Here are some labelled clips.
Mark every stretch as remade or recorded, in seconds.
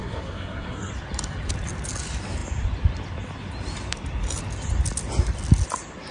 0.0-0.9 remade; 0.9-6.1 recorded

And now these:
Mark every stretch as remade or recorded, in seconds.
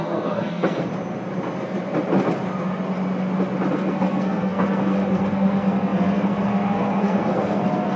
0.0-0.9 remade; 0.9-3.7 recorded; 3.7-8.0 remade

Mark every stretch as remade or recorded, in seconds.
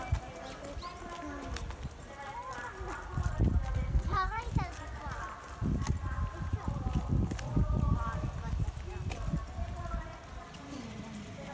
0.0-3.9 recorded; 3.9-4.4 remade; 4.4-11.5 recorded